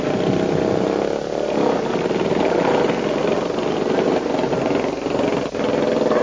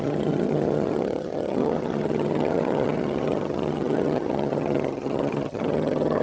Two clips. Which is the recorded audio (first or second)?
first